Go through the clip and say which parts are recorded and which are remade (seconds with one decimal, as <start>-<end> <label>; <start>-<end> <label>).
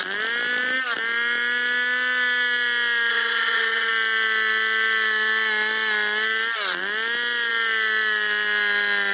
0.0-3.1 recorded; 3.1-3.9 remade; 3.9-9.1 recorded